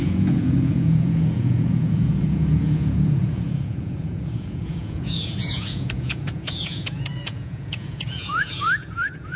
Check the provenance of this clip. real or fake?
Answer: fake